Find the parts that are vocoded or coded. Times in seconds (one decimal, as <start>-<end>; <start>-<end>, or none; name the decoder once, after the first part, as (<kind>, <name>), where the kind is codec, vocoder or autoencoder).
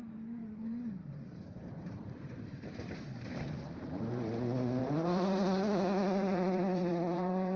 0.4-4.0 (vocoder, BigVGAN v2); 4.8-7.6